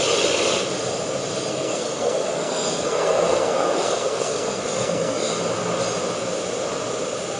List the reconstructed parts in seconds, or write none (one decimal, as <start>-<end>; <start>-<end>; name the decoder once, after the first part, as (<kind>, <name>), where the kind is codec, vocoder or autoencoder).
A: 1.5-5.4 (codec, SNAC)